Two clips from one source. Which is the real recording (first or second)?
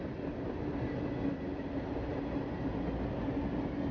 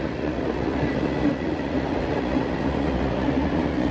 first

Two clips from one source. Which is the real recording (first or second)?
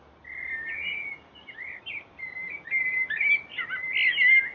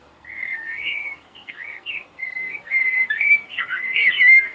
first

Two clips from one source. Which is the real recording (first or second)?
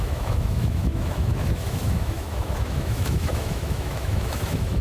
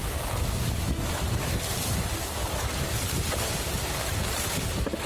second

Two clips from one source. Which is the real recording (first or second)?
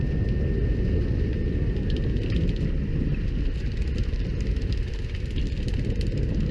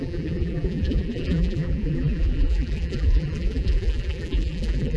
first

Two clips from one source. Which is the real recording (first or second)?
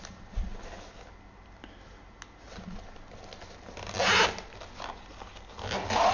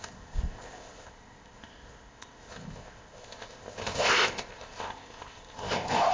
first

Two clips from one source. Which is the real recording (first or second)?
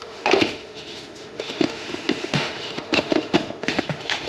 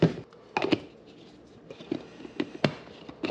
second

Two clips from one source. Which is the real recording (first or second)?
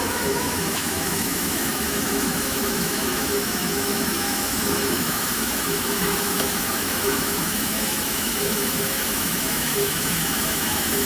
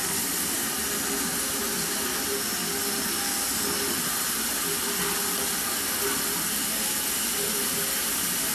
second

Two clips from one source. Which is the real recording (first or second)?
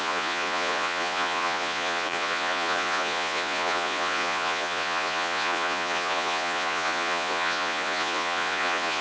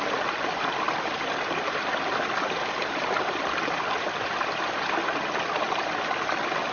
second